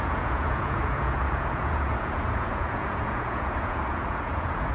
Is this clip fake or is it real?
fake